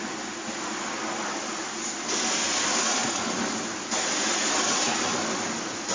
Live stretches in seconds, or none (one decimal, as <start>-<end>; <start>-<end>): 0.0-5.9